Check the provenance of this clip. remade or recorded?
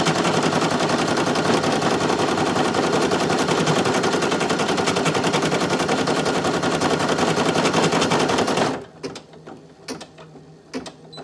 recorded